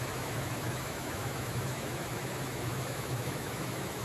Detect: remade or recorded remade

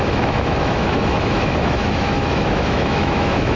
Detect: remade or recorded remade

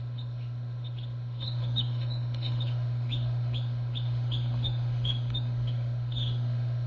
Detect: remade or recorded remade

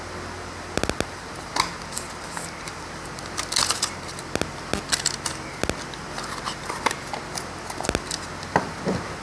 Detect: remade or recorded recorded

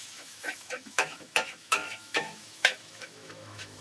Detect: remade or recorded remade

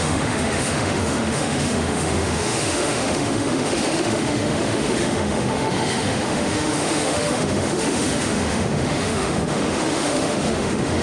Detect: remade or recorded remade